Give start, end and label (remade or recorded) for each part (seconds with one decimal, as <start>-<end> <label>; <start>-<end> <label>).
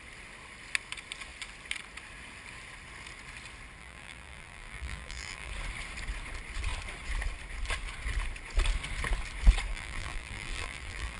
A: 0.0-3.8 recorded; 3.8-5.5 remade; 5.5-9.7 recorded; 9.7-11.2 remade